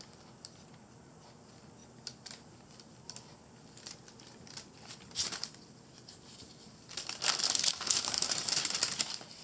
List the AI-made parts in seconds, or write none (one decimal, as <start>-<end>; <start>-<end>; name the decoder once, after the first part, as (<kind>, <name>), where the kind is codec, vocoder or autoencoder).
none